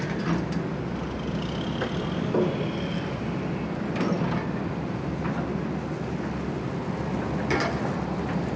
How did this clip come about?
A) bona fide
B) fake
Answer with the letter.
A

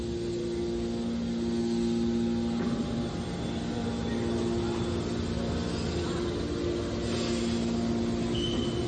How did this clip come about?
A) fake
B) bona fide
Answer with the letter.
B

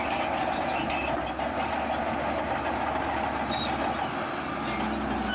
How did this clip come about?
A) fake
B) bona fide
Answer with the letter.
B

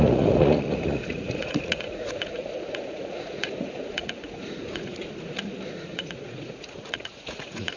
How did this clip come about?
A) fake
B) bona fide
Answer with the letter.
A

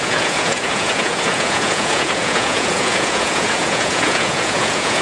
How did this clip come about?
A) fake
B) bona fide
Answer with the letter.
A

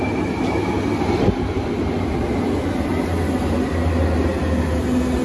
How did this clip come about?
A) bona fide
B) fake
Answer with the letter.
A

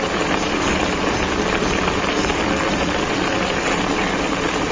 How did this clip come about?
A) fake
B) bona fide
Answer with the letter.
B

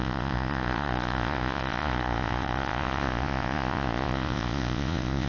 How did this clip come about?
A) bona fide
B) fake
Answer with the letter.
B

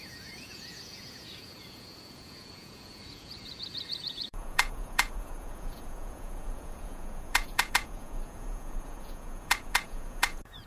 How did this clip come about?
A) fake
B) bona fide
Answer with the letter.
A